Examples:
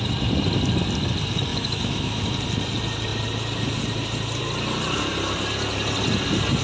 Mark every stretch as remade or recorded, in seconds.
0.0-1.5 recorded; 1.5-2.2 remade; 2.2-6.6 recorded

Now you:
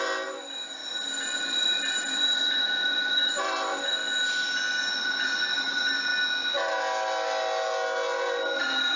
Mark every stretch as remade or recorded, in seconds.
0.0-0.8 remade; 0.8-1.4 recorded; 1.4-4.0 remade; 4.0-5.0 recorded; 5.0-6.1 remade; 6.1-8.6 recorded; 8.6-9.0 remade